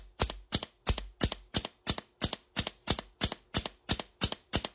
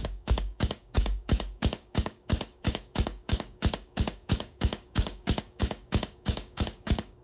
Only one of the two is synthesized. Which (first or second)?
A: second